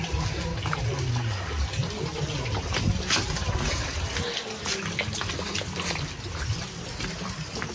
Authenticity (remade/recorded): recorded